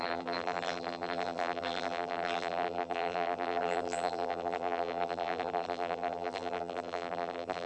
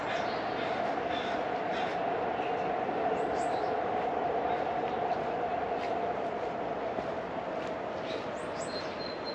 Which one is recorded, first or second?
second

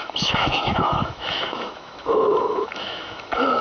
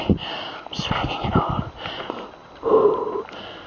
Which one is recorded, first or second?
second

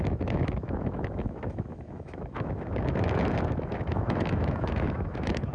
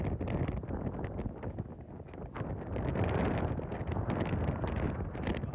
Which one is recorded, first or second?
second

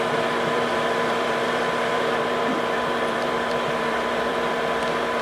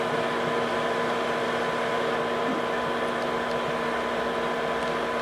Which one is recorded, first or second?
second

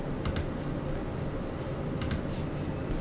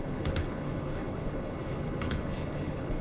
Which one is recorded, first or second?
first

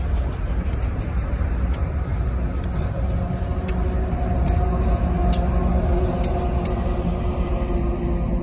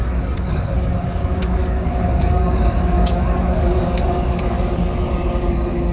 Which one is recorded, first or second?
first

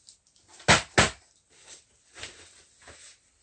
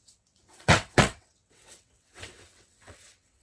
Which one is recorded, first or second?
first